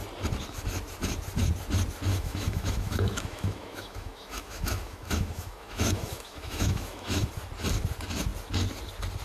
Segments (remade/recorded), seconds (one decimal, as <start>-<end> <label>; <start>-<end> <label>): 0.0-2.1 recorded; 2.1-7.3 remade; 7.3-9.2 recorded